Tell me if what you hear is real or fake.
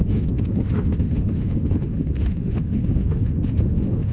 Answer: fake